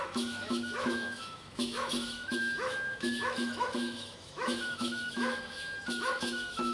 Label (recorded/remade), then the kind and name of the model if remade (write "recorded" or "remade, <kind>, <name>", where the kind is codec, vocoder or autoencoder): remade, autoencoder, DAC-VAE